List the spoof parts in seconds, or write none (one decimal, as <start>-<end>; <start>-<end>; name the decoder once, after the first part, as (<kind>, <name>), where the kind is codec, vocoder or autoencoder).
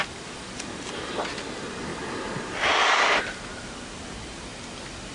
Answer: none